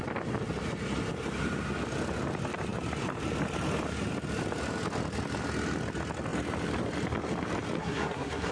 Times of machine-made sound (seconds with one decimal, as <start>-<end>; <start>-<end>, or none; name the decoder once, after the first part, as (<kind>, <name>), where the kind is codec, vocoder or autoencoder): 7.8-8.5 (codec, SNAC)